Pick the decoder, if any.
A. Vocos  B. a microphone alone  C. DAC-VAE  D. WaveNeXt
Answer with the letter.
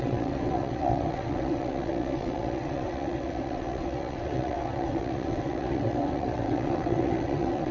D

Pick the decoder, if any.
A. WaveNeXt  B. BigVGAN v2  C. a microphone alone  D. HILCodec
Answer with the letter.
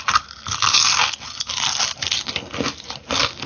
C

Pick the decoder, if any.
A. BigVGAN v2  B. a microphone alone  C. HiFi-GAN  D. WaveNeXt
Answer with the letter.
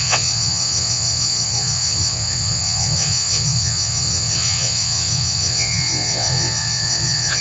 D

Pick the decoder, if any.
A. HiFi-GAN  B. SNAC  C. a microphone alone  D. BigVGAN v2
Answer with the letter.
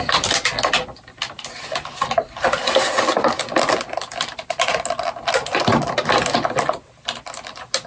C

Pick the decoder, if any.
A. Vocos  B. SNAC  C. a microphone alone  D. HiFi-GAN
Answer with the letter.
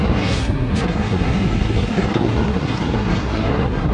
B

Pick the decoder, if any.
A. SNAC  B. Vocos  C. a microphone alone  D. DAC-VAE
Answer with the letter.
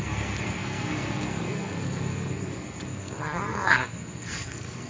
A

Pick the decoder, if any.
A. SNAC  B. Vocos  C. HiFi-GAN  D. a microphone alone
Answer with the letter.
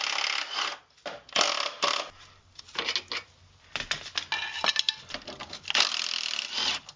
D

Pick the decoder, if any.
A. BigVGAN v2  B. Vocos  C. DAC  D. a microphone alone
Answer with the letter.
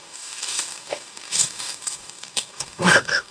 C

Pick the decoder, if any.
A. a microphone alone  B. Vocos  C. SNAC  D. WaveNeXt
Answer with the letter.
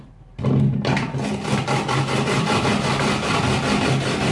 A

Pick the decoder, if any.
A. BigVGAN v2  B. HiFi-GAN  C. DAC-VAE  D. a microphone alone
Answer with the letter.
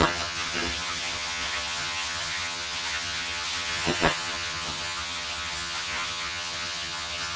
B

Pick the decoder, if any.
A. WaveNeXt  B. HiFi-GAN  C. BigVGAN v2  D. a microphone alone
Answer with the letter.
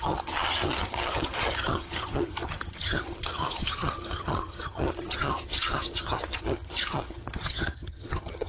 B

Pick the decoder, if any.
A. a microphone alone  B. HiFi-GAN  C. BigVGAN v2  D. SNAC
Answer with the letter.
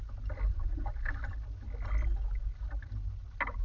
A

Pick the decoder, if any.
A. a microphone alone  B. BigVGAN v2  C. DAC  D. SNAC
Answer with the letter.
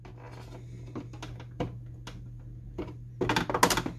A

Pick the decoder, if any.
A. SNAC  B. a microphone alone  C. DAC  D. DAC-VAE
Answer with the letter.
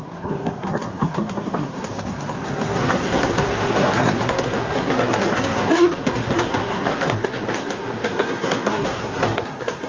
A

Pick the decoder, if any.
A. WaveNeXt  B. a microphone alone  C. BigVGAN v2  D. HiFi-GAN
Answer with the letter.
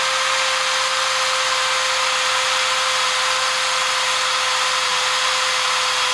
B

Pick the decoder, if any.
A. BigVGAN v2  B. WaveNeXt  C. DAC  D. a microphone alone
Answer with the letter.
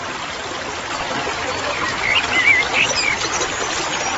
D